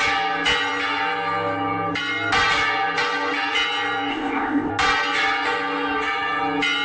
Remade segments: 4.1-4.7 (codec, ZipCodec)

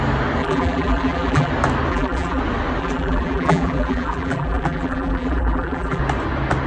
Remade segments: 0.4-1.5 (vocoder, BigVGAN v2); 1.9-2.4; 2.8-6.0

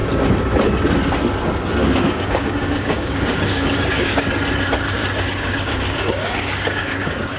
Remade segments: 1.8-4.3 (codec, DAC); 5.0-7.4

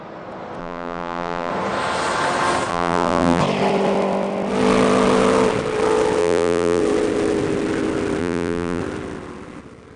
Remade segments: 0.6-1.5 (vocoder, BigVGAN v2); 2.7-3.4; 6.2-6.8; 8.2-8.8

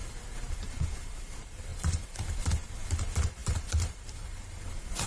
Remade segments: 0.0-0.5 (vocoder, BigVGAN v2); 1.7-2.5; 3.4-4.0

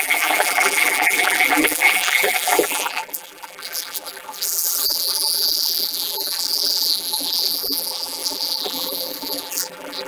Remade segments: 0.0-10.1 (vocoder, BigVGAN v2)